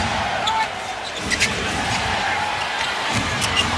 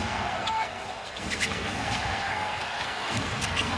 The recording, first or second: first